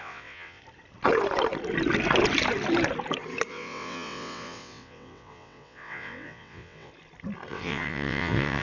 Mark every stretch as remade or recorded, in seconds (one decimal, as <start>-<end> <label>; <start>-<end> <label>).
0.0-0.6 remade; 0.6-3.5 recorded; 3.5-6.9 remade; 6.9-7.5 recorded; 7.5-8.6 remade

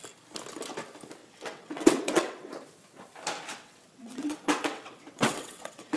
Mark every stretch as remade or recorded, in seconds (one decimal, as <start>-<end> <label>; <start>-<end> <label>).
0.0-1.2 recorded; 1.2-2.5 remade; 2.5-3.5 recorded; 3.5-6.0 remade

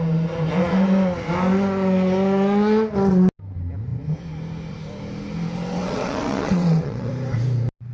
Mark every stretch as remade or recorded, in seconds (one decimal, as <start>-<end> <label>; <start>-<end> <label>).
0.0-5.8 recorded; 5.8-7.1 remade; 7.1-7.9 recorded

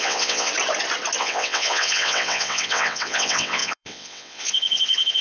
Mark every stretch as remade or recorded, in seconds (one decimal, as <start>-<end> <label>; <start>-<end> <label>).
0.0-0.5 remade; 0.5-1.2 recorded; 1.2-5.2 remade

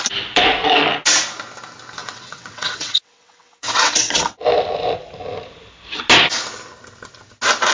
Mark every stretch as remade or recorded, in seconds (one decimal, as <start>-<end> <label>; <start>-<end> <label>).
0.0-2.0 recorded; 2.0-4.3 remade; 4.3-7.7 recorded

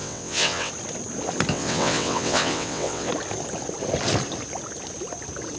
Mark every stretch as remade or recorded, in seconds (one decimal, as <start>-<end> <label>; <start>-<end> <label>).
0.0-0.7 remade; 0.7-1.5 recorded; 1.5-3.1 remade; 3.1-5.6 recorded

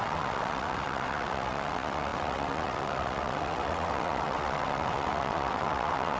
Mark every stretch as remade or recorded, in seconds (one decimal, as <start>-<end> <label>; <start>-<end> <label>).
0.0-6.2 remade

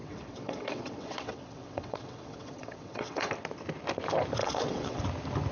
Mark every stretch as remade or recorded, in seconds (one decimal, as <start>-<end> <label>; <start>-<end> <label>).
0.0-3.3 remade; 3.3-4.4 recorded; 4.4-5.0 remade; 5.0-5.5 recorded